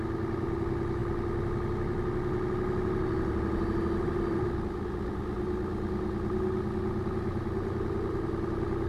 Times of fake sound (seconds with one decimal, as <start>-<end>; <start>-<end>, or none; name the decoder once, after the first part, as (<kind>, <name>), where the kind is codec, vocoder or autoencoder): none